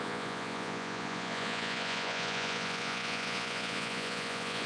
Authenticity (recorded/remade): remade